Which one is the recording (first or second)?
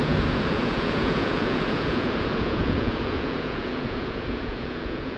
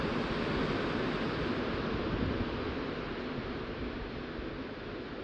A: second